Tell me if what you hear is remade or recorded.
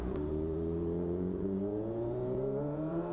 remade